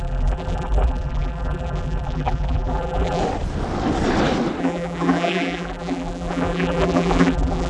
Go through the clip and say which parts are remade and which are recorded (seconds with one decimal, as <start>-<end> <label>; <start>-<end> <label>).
0.0-3.2 remade; 3.2-4.6 recorded; 4.6-7.7 remade